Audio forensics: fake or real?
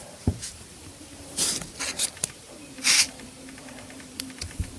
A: fake